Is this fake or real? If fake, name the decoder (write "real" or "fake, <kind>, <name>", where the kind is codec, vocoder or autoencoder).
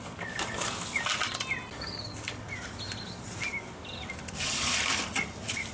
real